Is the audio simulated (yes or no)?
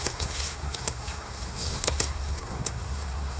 yes